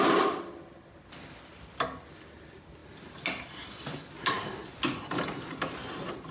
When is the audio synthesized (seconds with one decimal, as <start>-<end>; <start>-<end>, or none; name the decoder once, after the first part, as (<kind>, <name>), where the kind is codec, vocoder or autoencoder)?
0.0-4.6 (vocoder, BigVGAN v2); 5.5-6.3